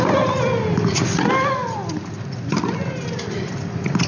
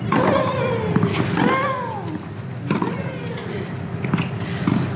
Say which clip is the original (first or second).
second